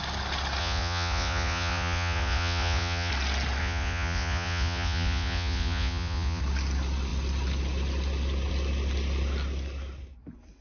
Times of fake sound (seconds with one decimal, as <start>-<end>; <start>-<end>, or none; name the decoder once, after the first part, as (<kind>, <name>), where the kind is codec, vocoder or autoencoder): 0.6-3.1 (vocoder, Vocos); 3.6-6.4